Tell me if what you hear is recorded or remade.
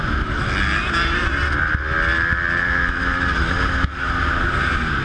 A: recorded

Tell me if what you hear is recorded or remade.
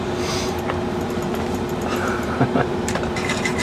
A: remade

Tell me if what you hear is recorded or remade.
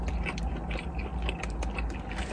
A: recorded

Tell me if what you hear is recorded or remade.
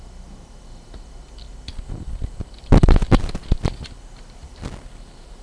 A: remade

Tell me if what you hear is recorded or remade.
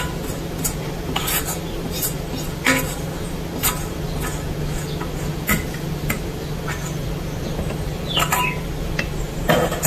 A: recorded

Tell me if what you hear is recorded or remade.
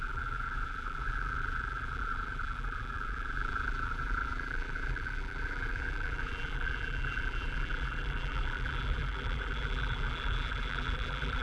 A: remade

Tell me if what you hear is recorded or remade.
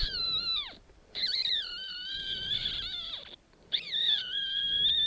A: remade